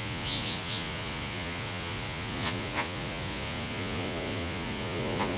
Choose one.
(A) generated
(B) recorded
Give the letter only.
A